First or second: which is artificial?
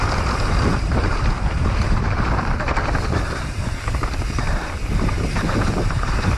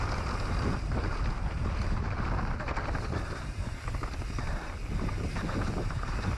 first